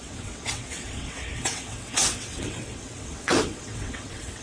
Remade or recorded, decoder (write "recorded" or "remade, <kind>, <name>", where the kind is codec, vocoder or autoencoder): remade, vocoder, WaveNeXt